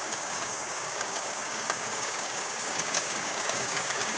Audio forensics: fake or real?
fake